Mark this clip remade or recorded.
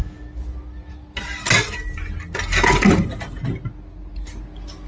recorded